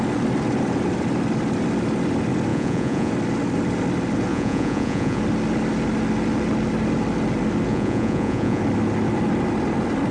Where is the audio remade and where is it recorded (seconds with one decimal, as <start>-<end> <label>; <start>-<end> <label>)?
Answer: 0.0-2.5 recorded; 2.5-3.1 remade; 3.1-4.3 recorded; 4.3-5.2 remade; 5.2-7.7 recorded; 7.7-8.6 remade; 8.6-10.1 recorded